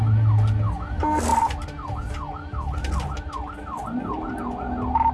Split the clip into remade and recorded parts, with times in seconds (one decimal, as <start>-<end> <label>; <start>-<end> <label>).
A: 0.0-5.1 recorded

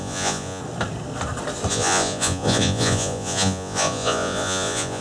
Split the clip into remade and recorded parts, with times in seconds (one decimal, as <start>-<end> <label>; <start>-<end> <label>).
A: 0.0-0.6 remade; 0.6-1.7 recorded; 1.7-5.0 remade

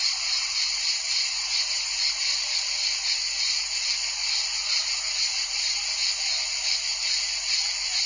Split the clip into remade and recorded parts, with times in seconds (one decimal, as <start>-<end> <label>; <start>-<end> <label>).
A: 0.0-8.1 recorded

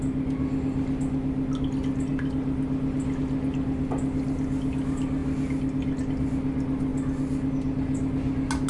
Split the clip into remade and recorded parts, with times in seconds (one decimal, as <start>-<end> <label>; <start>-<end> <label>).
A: 0.0-8.7 recorded

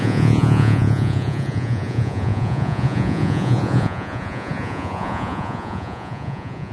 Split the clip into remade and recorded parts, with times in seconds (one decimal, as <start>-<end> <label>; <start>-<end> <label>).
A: 0.0-6.7 remade